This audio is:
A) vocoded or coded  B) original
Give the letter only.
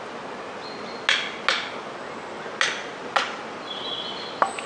B